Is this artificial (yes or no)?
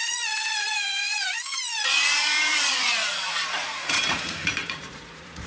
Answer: yes